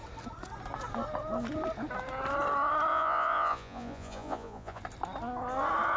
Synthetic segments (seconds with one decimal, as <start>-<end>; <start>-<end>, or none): 2.9-4.8